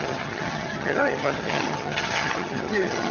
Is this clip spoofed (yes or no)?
yes